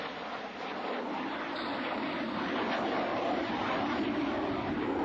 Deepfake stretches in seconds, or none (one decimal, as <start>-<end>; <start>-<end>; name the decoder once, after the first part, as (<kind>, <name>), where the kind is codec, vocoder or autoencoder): 3.1-3.7 (vocoder, BigVGAN v2)